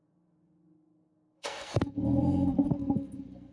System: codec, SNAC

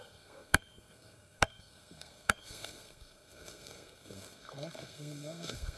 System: codec, SNAC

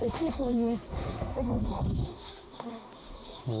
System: codec, SNAC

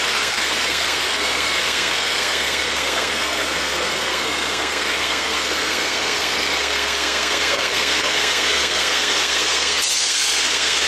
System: codec, SNAC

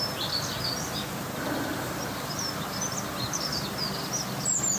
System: none